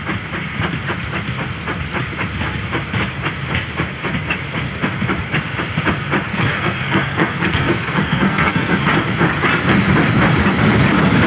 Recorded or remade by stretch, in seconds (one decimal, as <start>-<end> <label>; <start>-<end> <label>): 0.0-6.3 recorded; 6.3-8.8 remade; 8.8-11.3 recorded